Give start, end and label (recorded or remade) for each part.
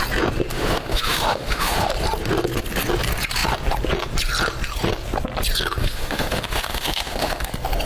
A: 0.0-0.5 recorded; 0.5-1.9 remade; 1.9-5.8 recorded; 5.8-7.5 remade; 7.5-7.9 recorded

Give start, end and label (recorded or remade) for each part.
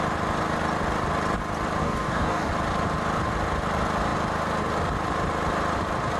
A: 0.0-1.8 recorded; 1.8-2.5 remade; 2.5-6.2 recorded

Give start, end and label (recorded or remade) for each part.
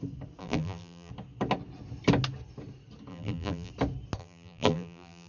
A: 0.0-0.4 recorded; 0.4-1.1 remade; 1.1-3.1 recorded; 3.1-3.7 remade; 3.7-4.2 recorded; 4.2-5.3 remade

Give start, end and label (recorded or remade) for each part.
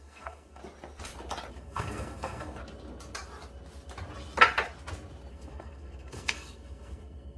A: 0.0-0.6 remade; 0.6-1.5 recorded; 1.5-2.6 remade; 2.6-5.3 recorded; 5.3-7.4 remade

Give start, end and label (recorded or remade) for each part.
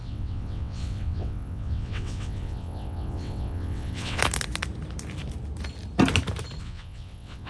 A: 0.0-4.2 remade; 4.2-6.6 recorded; 6.6-7.5 remade